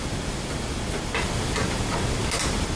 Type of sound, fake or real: real